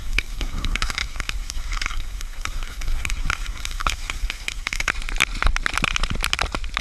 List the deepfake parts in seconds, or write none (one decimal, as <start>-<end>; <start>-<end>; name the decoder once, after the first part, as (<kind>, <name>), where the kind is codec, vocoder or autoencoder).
0.0-4.9 (codec, SNAC)